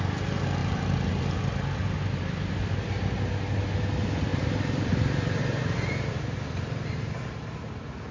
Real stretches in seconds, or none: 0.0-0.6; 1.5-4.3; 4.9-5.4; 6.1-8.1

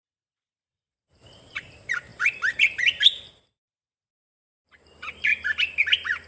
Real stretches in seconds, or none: 5.3-6.3

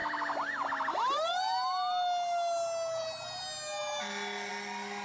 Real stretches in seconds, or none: 0.0-5.0

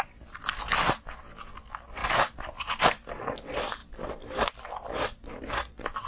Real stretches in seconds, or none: 0.7-1.6

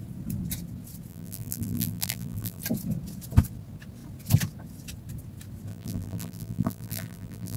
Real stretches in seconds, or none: 0.0-1.1; 2.6-5.7

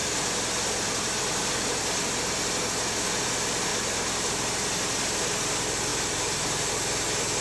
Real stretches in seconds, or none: 0.0-3.7; 4.3-5.9; 6.7-7.4